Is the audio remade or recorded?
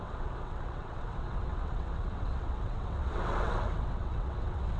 remade